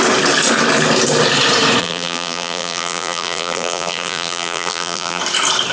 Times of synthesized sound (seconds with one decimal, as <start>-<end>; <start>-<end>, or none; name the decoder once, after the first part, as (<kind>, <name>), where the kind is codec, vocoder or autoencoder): 1.8-5.2 (vocoder, BigVGAN v2)